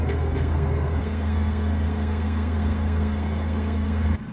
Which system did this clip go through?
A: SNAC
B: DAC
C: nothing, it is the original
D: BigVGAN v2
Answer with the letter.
A